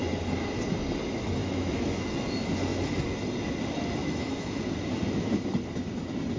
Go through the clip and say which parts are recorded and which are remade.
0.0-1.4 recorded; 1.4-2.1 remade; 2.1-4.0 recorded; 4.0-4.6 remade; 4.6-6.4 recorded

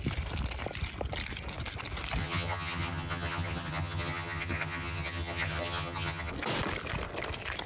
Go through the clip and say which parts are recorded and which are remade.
0.0-2.2 recorded; 2.2-6.3 remade; 6.3-7.7 recorded

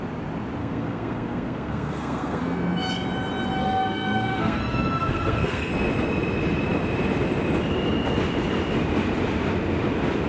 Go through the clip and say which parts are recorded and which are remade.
0.0-0.6 recorded; 0.6-2.4 remade; 2.4-3.6 recorded; 3.6-5.7 remade; 5.7-10.3 recorded

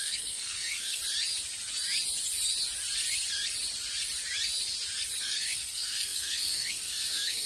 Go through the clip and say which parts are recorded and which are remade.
0.0-1.0 remade; 1.0-5.2 recorded; 5.2-7.5 remade